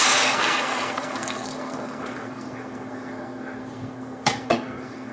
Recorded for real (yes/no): no